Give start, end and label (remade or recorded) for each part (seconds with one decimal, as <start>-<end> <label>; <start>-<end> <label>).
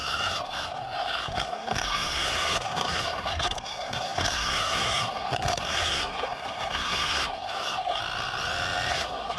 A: 0.0-8.0 remade; 8.0-8.9 recorded; 8.9-9.4 remade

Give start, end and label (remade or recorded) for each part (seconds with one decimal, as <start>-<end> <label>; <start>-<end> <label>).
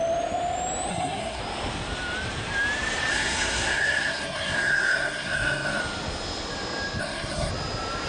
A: 0.0-0.9 recorded; 0.9-1.4 remade; 1.4-3.1 recorded; 3.1-5.8 remade; 5.8-7.0 recorded; 7.0-7.5 remade; 7.5-8.1 recorded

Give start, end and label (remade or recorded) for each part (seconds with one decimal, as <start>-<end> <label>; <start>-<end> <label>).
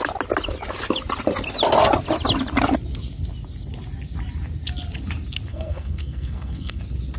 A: 0.0-5.5 recorded; 5.5-6.8 remade; 6.8-7.2 recorded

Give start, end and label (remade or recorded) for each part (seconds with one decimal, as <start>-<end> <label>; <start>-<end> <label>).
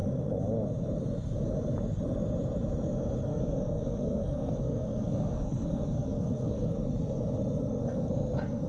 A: 0.0-3.3 recorded; 3.3-6.7 remade; 6.7-7.8 recorded; 7.8-8.7 remade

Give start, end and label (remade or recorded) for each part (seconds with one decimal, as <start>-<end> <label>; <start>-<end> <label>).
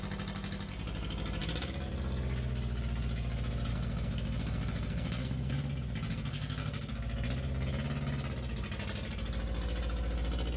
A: 0.0-3.7 recorded; 3.7-5.5 remade; 5.5-6.1 recorded; 6.1-6.9 remade; 6.9-10.6 recorded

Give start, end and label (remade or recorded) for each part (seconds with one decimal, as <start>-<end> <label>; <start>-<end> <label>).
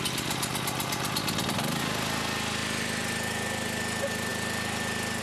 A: 0.0-5.2 recorded